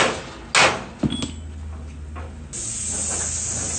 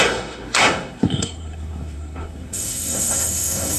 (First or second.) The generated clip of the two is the second